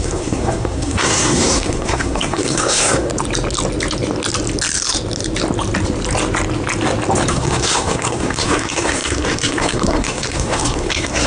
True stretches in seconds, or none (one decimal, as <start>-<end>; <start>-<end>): 3.1-7.3

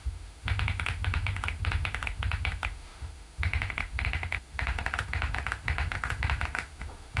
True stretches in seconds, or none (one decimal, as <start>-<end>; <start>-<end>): none

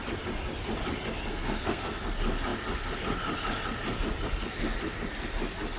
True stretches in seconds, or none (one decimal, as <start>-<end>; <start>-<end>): 0.0-1.3; 2.0-5.8